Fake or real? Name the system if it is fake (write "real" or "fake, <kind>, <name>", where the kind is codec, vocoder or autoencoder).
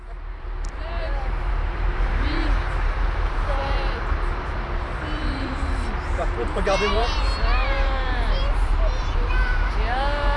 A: fake, vocoder, BigVGAN v2